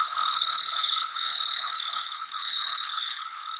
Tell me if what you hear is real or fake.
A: fake